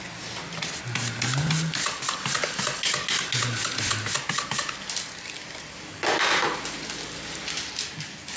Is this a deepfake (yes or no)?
no